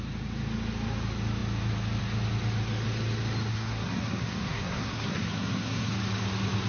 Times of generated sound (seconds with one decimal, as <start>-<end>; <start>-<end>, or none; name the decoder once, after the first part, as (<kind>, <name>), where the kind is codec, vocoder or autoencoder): 3.5-5.9 (codec, SNAC)